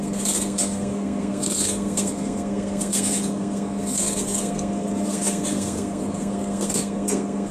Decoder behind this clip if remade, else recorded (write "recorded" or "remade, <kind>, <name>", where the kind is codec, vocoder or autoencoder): remade, codec, SNAC